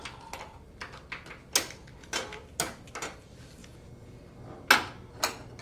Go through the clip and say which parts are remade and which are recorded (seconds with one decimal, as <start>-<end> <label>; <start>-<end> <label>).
0.0-3.6 recorded; 3.6-4.2 remade; 4.2-5.6 recorded

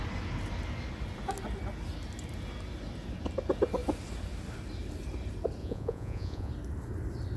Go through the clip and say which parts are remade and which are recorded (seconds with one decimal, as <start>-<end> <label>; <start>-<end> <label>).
0.0-5.6 recorded; 5.6-6.5 remade; 6.5-7.4 recorded